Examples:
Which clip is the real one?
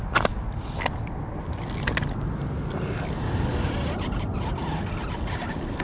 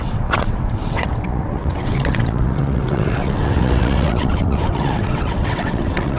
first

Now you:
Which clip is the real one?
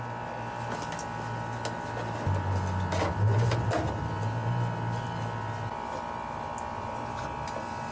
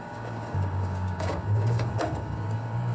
first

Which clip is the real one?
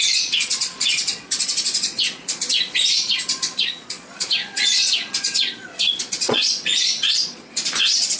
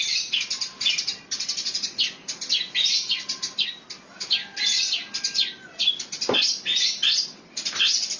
second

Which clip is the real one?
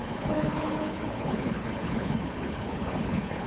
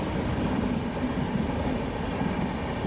second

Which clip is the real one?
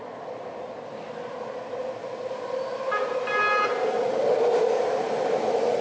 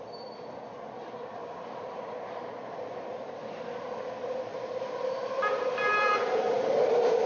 first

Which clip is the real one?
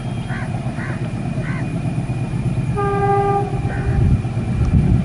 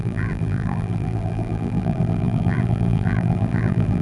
first